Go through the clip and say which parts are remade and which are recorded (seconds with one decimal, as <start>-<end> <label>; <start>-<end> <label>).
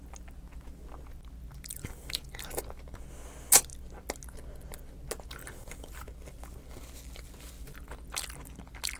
0.0-9.0 recorded